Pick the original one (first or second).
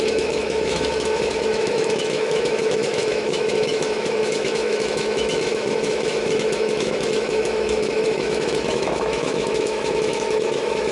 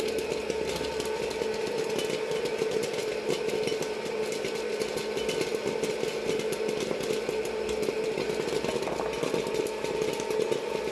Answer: second